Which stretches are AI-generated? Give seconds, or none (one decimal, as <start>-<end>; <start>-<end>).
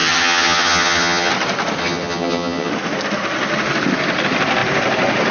0.0-1.3; 1.8-2.7